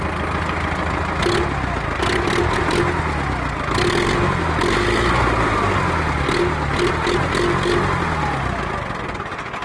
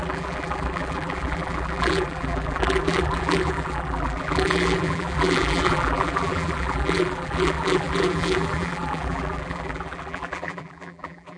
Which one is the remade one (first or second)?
second